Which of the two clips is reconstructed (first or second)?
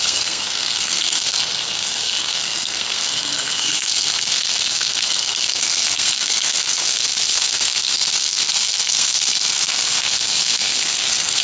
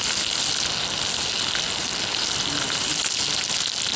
first